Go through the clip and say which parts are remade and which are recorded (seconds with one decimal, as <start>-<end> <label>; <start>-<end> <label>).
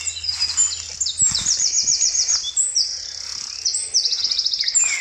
0.0-5.0 recorded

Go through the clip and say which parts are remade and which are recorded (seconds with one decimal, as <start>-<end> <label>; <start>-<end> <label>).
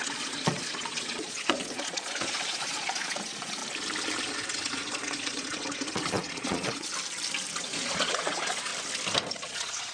0.0-3.6 remade; 3.6-4.2 recorded; 4.2-6.9 remade; 6.9-7.6 recorded; 7.6-8.7 remade; 8.7-9.3 recorded; 9.3-9.9 remade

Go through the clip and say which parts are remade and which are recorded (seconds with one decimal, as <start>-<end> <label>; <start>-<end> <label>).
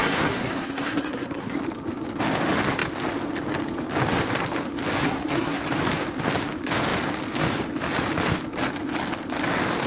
0.0-1.6 remade; 1.6-5.0 recorded; 5.0-5.6 remade; 5.6-9.9 recorded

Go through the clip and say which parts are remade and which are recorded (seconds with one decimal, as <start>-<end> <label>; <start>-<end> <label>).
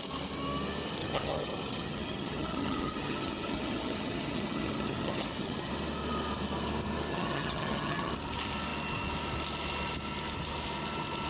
0.0-1.0 recorded; 1.0-5.7 remade; 5.7-7.1 recorded; 7.1-8.1 remade; 8.1-11.3 recorded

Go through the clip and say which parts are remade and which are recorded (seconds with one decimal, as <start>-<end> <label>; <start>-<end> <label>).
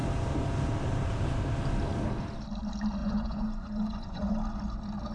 0.0-3.0 recorded; 3.0-4.3 remade; 4.3-5.1 recorded